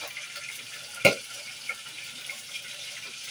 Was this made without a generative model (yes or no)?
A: no